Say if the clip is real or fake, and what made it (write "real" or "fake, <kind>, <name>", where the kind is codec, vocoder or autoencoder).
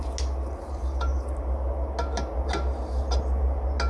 real